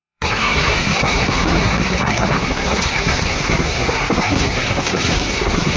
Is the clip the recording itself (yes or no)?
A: no